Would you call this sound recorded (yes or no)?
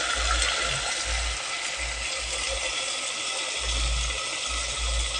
yes